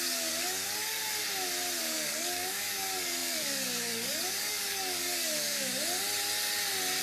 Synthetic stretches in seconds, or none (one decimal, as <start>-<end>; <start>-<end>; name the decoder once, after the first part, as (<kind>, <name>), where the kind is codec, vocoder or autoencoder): 0.0-1.0 (codec, DAC); 1.8-5.7